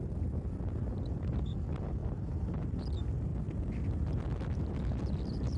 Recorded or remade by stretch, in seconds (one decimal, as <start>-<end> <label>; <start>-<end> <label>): 0.0-2.0 recorded; 2.0-2.7 remade; 2.7-5.6 recorded